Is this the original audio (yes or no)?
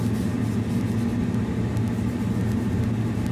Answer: yes